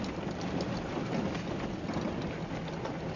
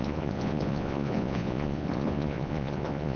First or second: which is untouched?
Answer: first